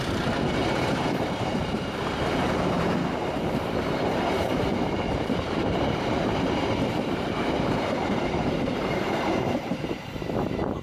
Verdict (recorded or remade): remade